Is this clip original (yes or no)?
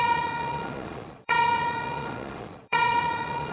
no